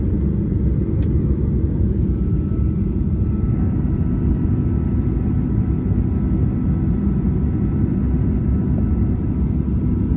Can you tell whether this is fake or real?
real